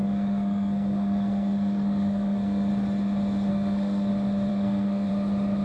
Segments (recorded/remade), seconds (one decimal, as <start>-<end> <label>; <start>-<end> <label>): 0.0-2.7 remade; 2.7-3.5 recorded; 3.5-4.1 remade; 4.1-4.5 recorded; 4.5-5.1 remade; 5.1-5.6 recorded